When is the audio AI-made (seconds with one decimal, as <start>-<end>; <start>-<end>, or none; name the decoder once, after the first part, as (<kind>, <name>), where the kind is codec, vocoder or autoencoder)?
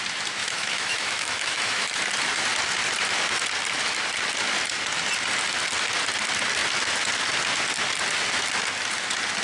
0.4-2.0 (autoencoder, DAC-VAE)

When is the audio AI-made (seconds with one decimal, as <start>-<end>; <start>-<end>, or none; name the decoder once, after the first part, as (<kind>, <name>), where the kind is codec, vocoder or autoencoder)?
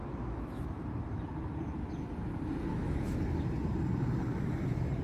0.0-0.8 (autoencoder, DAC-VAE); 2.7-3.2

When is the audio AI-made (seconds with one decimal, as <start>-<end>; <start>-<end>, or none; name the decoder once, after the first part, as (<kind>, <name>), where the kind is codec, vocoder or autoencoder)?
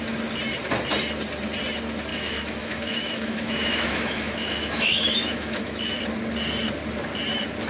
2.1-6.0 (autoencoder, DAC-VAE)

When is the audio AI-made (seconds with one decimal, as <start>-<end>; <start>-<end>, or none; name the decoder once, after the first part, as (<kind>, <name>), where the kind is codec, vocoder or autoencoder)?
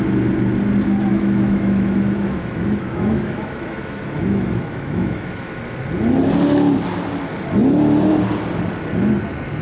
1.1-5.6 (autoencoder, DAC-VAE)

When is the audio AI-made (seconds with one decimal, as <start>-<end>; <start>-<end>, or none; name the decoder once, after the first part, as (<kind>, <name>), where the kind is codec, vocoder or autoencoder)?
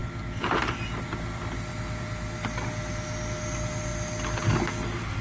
none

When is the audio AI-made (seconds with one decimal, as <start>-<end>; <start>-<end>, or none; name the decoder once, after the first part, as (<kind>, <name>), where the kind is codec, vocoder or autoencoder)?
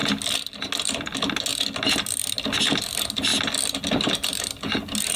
none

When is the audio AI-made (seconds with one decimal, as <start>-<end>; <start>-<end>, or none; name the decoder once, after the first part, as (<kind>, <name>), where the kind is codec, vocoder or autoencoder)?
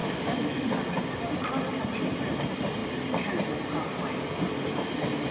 0.0-0.7 (autoencoder, DAC-VAE)